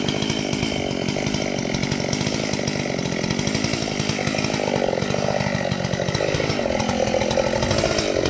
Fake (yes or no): no